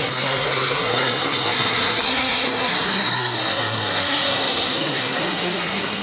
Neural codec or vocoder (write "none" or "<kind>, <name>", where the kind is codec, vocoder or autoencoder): codec, SNAC